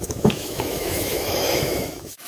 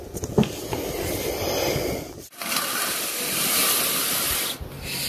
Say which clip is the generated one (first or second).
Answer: first